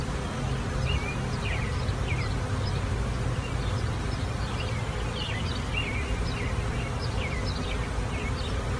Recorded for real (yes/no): yes